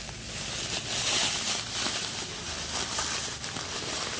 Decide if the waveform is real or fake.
real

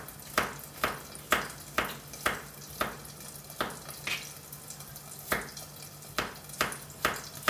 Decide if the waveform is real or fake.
real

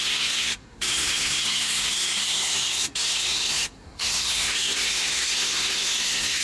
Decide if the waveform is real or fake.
fake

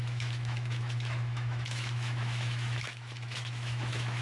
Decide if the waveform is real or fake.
fake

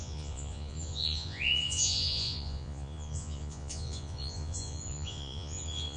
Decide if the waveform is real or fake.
fake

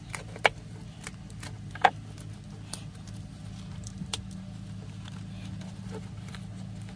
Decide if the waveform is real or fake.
real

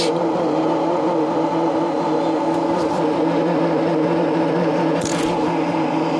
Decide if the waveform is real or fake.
fake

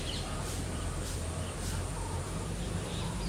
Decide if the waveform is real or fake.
fake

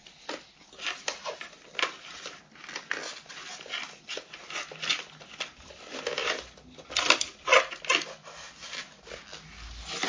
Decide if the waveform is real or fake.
real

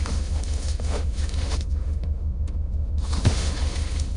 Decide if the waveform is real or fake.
fake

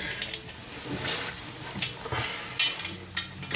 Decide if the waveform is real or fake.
real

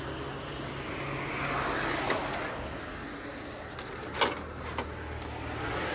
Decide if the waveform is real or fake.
real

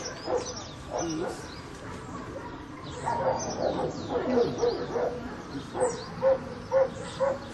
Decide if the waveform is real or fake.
real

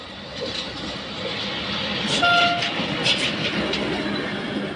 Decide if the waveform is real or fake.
real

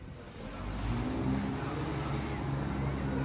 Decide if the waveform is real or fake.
real